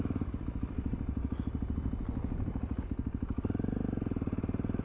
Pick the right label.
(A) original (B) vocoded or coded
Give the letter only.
A